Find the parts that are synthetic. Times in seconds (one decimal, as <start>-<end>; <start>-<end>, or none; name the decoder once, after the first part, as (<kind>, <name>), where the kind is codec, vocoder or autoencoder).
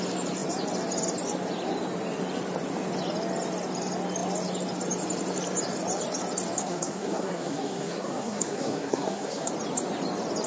6.6-9.5 (codec, SNAC)